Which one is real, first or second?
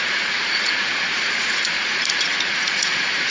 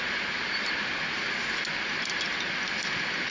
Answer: second